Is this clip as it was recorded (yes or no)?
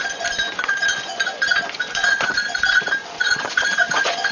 no